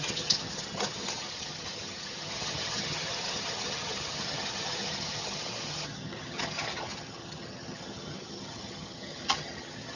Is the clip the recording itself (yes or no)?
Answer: no